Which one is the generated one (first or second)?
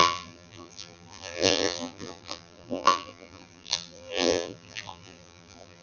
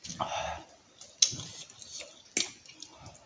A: first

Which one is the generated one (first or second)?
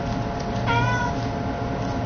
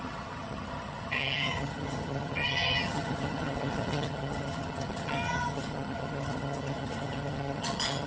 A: second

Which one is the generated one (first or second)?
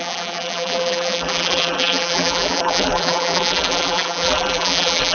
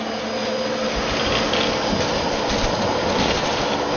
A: first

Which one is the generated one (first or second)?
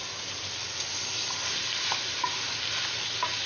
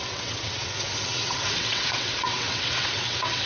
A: second